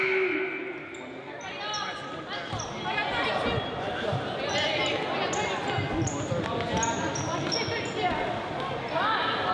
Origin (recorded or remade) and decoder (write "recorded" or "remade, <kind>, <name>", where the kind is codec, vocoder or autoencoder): recorded